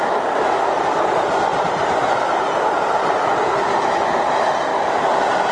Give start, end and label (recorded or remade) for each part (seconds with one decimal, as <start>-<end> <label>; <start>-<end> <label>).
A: 0.0-5.5 recorded